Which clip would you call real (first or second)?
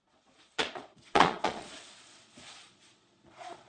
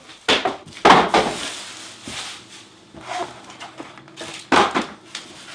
second